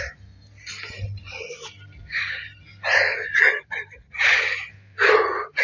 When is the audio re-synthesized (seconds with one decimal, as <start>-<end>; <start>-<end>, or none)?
none